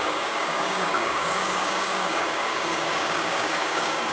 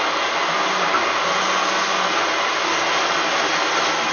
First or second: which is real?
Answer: second